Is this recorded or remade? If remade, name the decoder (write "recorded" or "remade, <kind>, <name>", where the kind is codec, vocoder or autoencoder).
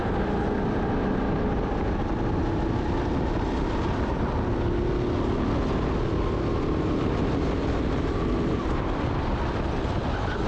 recorded